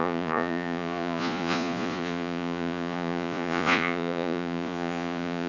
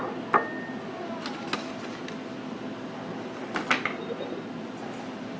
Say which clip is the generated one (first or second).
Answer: first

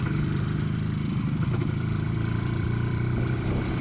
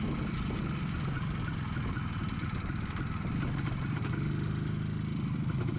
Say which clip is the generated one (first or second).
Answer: first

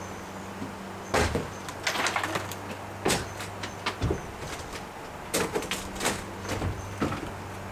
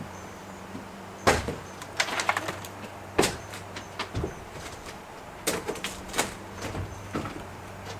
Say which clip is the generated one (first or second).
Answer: second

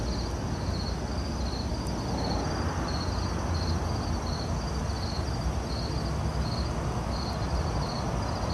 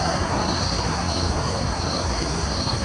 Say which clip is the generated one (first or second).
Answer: second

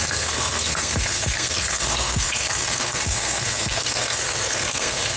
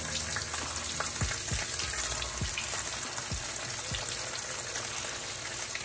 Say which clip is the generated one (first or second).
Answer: first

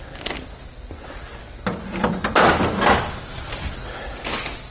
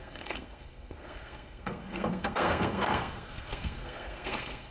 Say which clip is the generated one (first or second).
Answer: second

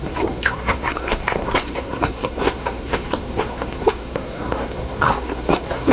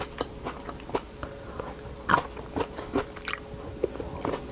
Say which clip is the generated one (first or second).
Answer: first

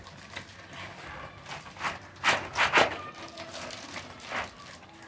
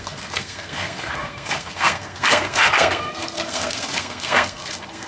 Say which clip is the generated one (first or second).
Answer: second